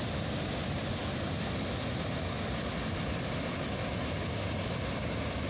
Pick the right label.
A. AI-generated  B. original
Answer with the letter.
B